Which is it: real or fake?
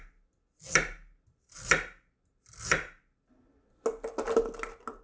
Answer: real